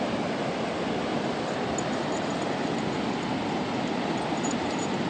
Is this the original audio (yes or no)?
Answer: yes